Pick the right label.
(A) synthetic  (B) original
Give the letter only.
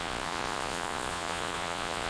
A